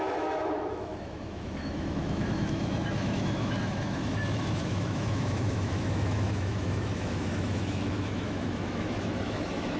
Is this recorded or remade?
remade